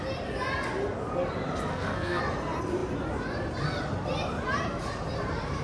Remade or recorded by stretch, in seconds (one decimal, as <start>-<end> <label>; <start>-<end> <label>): 0.0-1.7 recorded; 1.7-2.2 remade; 2.2-5.6 recorded